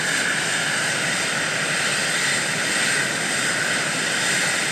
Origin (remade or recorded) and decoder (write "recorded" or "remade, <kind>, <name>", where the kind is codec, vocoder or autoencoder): recorded